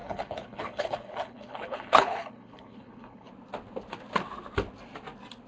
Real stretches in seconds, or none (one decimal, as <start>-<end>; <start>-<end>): 3.3-5.5